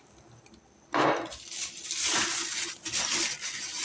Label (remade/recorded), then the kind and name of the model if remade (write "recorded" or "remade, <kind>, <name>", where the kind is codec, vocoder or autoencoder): remade, vocoder, BigVGAN v2